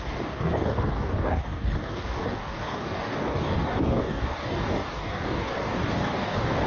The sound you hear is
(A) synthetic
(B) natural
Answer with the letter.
A